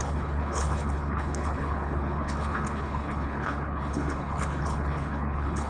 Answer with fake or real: fake